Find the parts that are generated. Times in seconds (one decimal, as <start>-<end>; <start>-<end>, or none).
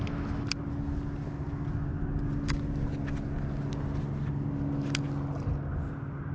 none